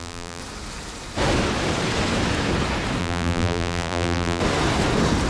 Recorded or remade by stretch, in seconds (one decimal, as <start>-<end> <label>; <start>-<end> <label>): 0.0-0.4 remade; 0.4-3.0 recorded; 3.0-4.4 remade; 4.4-5.3 recorded